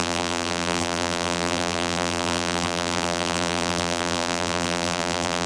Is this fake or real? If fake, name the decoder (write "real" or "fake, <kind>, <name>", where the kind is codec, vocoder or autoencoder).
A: fake, vocoder, BigVGAN v2